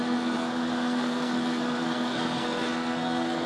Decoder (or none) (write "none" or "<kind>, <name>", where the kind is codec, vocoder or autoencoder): codec, SNAC